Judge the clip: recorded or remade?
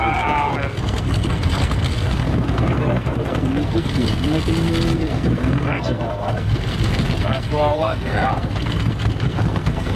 remade